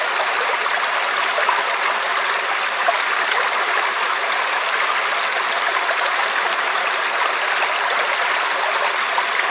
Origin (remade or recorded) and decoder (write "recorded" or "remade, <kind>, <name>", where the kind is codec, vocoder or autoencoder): recorded